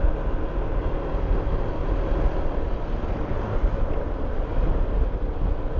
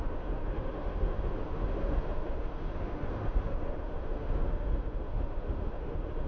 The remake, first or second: second